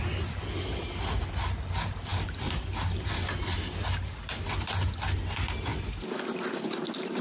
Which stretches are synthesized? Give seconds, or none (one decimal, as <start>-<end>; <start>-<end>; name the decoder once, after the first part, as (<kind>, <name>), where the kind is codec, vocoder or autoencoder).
none